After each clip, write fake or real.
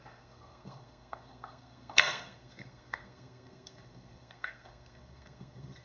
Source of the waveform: fake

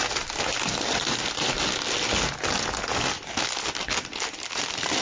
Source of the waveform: real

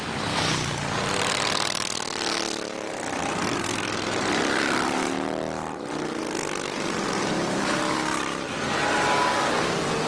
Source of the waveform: real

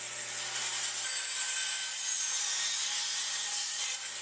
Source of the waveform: real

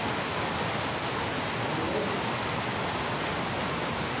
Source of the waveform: real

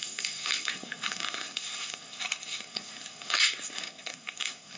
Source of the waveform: fake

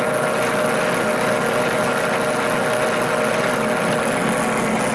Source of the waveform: real